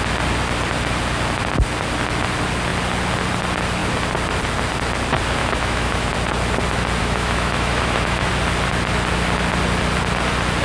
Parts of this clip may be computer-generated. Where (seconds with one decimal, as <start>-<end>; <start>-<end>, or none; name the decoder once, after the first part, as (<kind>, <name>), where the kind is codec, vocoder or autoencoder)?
5.4-6.1 (autoencoder, DAC-VAE); 7.0-8.3